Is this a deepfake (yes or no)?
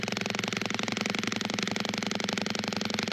no